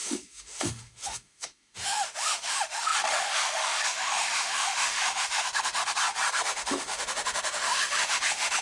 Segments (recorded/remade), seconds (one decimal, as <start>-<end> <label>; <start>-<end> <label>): 0.0-5.8 remade; 5.8-6.5 recorded; 6.5-8.6 remade